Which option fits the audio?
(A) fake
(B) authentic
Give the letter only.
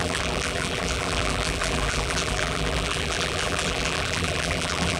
A